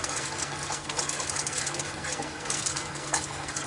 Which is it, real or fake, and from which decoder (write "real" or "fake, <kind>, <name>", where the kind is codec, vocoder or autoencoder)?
fake, codec, SNAC